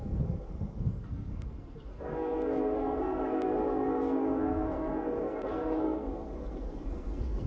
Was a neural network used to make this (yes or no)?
yes